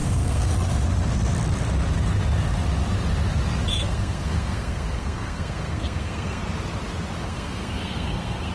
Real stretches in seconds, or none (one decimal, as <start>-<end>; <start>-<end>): 0.5-3.7; 6.4-7.2